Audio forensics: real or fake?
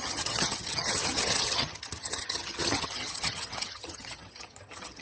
fake